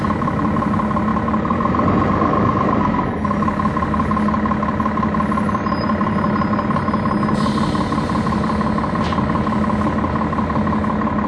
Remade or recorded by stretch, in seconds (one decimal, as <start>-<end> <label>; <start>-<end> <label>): 0.0-11.3 recorded